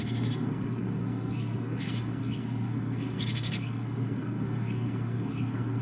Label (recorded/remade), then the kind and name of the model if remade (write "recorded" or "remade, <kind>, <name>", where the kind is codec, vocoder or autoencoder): remade, codec, SNAC